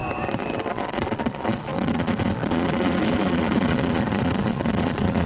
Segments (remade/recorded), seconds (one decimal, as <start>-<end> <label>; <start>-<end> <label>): 0.0-0.7 recorded; 0.7-5.3 remade